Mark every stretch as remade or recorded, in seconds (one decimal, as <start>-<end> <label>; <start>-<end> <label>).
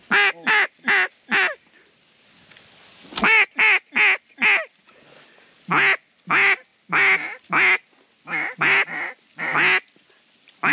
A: 0.0-10.7 recorded